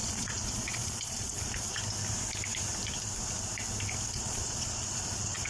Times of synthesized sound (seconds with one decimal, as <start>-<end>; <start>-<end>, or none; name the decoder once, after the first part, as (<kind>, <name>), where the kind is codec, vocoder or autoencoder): 0.0-1.8 (vocoder, Vocos); 4.1-5.5